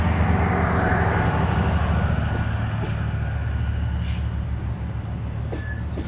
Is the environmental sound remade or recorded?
recorded